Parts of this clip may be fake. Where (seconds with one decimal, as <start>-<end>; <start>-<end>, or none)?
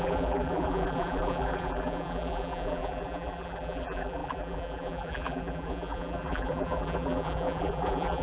0.0-8.2